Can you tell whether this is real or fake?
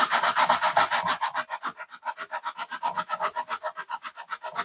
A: real